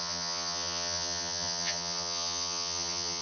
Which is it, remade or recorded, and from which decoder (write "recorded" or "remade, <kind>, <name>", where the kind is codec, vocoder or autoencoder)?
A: remade, vocoder, HiFi-GAN